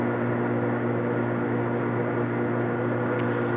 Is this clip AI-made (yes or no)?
no